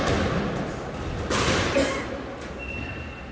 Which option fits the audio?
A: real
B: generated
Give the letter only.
A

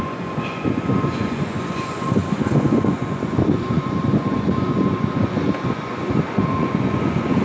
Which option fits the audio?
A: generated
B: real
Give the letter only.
A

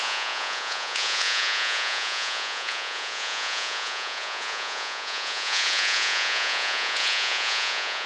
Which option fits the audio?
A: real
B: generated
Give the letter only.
B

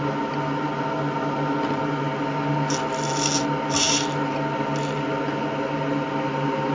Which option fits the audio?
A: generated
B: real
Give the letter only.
B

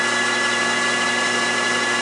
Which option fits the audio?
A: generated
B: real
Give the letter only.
B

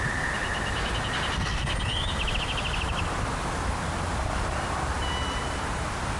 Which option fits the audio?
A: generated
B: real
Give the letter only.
B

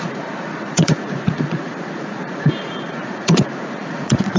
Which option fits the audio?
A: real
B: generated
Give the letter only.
B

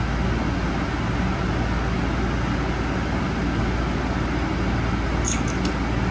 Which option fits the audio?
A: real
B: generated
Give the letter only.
A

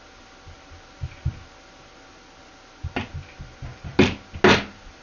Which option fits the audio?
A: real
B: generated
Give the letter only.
A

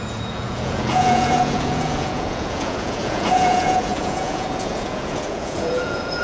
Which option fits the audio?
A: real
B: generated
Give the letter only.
B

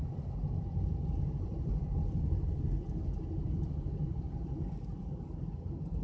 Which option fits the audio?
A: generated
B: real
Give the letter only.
B